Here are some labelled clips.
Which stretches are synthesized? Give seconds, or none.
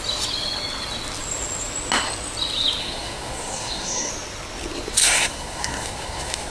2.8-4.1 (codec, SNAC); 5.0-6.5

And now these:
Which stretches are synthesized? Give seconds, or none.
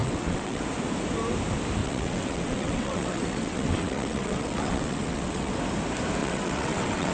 0.0-0.6 (vocoder, WaveNeXt); 1.8-5.5; 6.2-7.1